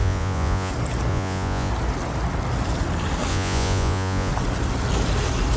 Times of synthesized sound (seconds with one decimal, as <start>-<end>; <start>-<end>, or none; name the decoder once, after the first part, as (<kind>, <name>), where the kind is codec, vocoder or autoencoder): 0.0-0.7 (vocoder, Vocos); 1.1-1.7; 3.3-4.3